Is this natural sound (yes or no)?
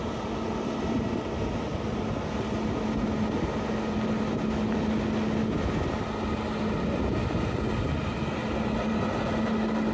yes